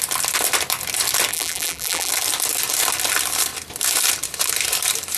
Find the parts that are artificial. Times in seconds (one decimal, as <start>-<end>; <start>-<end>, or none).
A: 1.3-2.1